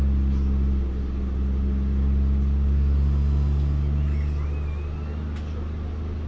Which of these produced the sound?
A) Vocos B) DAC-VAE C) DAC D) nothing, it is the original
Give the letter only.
D